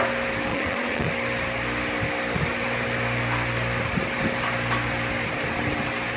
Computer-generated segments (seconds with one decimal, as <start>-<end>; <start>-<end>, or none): 0.5-1.1